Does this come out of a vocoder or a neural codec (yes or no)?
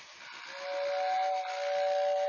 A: no